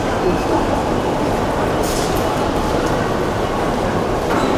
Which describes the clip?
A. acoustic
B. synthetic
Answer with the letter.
B